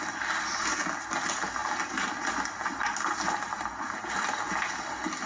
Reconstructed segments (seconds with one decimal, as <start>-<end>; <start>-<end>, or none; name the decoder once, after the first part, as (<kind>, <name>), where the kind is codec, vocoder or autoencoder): none